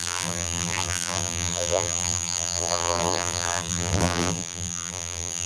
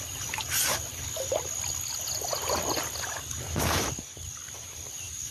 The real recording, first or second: second